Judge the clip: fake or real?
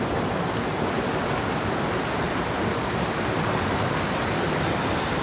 real